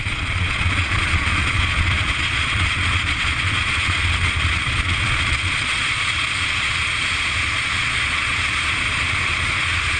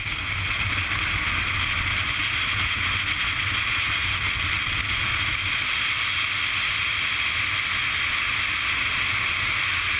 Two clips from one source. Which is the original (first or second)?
second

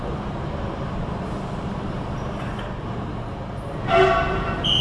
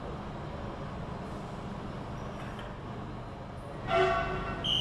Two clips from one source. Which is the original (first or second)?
second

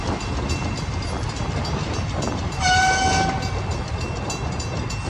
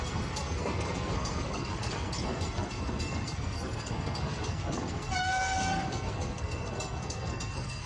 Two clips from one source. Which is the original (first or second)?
first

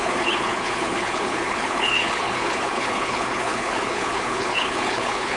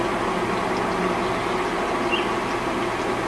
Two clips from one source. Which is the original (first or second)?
second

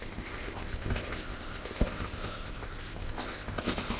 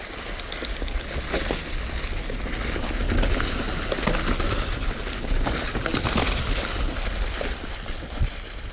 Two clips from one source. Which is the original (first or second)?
second